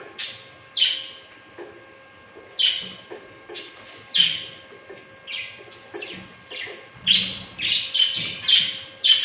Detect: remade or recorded recorded